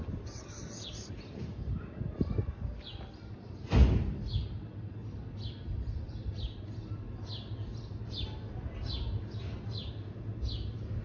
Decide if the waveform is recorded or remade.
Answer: recorded